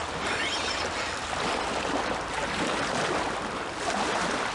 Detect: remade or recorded recorded